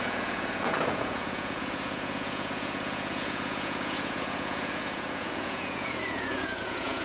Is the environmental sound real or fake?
fake